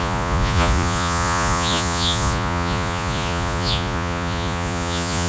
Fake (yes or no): yes